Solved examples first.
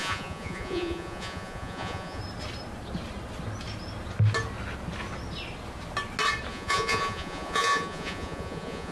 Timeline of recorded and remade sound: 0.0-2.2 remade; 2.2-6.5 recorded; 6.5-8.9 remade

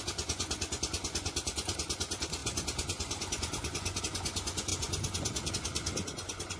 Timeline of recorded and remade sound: 0.0-6.6 remade

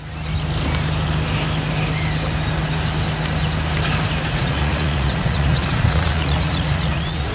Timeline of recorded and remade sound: 0.0-4.4 recorded; 4.4-7.3 remade